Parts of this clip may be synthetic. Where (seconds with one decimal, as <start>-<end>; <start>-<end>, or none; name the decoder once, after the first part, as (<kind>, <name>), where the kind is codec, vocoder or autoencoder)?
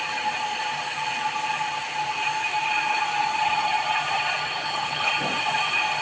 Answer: 4.6-5.1 (codec, HILCodec)